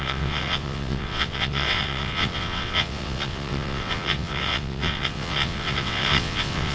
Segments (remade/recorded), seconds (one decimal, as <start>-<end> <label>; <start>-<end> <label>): 0.0-6.7 remade